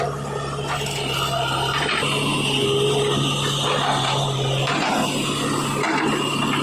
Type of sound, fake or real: real